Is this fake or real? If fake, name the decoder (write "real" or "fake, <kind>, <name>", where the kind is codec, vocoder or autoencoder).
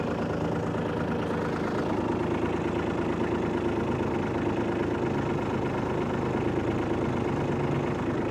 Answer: real